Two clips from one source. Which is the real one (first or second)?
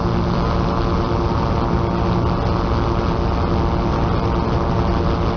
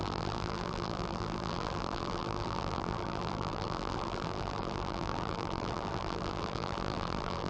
first